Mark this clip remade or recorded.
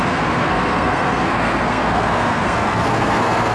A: remade